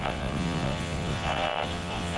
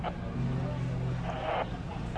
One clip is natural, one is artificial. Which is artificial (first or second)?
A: first